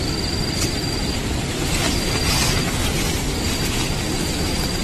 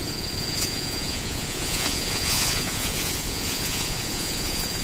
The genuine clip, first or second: first